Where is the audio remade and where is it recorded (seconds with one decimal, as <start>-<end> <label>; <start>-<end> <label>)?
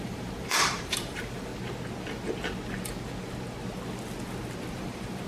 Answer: 0.0-1.5 remade; 1.5-4.7 recorded; 4.7-5.3 remade